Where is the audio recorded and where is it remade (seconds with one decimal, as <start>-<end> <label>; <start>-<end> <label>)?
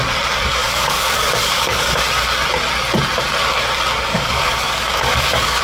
0.0-0.6 recorded; 0.6-2.0 remade; 2.0-4.1 recorded; 4.1-5.6 remade